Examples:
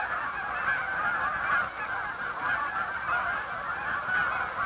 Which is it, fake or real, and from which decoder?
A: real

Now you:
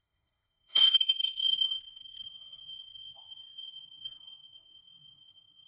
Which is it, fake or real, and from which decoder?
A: fake, codec, SNAC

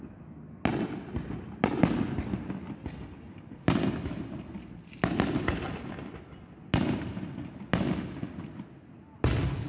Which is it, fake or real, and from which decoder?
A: real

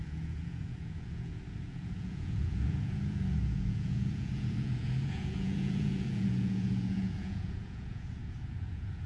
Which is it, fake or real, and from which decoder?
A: fake, vocoder, Vocos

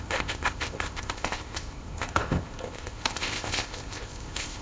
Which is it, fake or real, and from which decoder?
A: fake, codec, ZipCodec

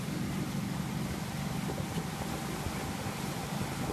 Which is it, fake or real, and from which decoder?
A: fake, vocoder, BigVGAN v2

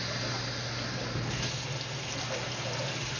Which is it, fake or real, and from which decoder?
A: real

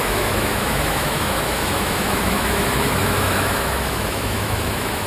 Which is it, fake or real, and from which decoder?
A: fake, autoencoder, DAC-VAE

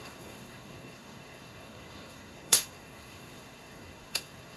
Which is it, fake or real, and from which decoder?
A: fake, codec, SNAC